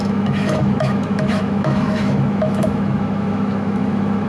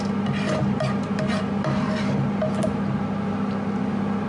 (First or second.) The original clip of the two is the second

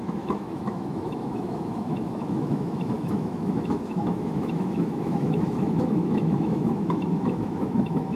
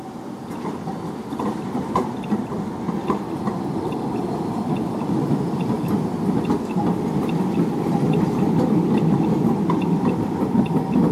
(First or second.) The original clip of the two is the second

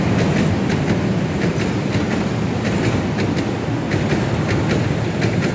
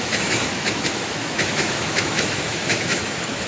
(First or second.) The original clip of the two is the first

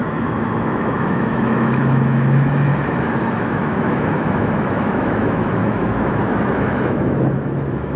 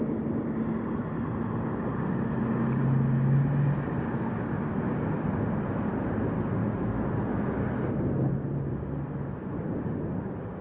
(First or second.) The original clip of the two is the second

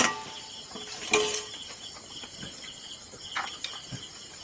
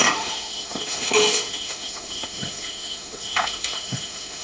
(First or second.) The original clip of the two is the first